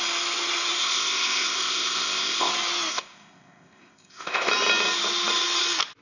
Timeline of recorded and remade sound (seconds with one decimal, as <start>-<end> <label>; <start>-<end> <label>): 0.0-0.8 recorded; 0.8-2.5 remade; 2.5-2.9 recorded; 2.9-4.5 remade; 4.5-6.0 recorded